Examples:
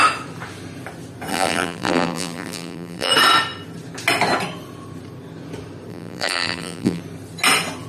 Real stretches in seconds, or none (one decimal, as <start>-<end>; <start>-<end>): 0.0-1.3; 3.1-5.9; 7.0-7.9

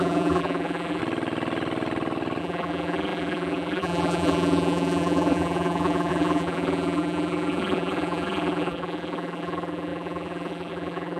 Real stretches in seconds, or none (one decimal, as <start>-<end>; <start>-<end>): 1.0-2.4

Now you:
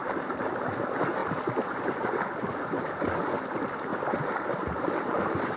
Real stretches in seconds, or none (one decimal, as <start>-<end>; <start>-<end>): 0.7-3.9